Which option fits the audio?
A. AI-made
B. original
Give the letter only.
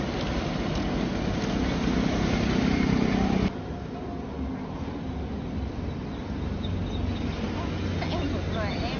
B